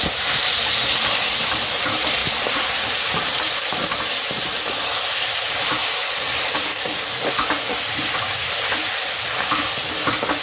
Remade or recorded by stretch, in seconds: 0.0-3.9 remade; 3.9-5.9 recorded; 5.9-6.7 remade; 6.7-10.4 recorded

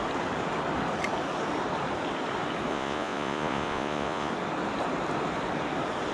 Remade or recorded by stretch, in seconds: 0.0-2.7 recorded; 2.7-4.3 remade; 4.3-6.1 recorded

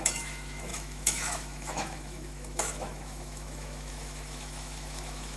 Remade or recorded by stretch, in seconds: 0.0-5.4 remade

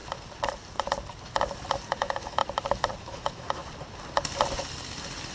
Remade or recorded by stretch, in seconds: 0.0-2.0 recorded; 2.0-2.4 remade; 2.4-3.0 recorded; 3.0-3.6 remade; 3.6-5.3 recorded

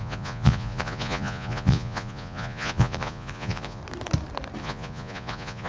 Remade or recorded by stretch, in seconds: 0.0-3.8 remade; 3.8-4.6 recorded; 4.6-5.7 remade

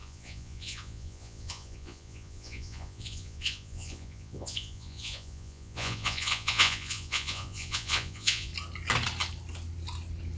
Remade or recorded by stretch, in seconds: 0.0-8.5 remade; 8.5-10.4 recorded

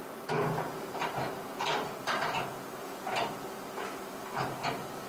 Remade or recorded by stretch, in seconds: 0.0-5.1 recorded

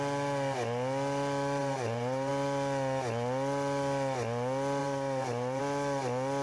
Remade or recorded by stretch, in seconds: 0.0-1.6 recorded; 1.6-2.3 remade; 2.3-4.8 recorded; 4.8-5.6 remade; 5.6-6.4 recorded